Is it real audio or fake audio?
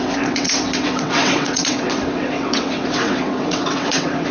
fake